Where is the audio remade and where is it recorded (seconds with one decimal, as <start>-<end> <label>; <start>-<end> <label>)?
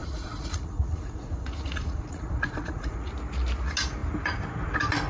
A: 0.0-3.1 remade; 3.1-5.1 recorded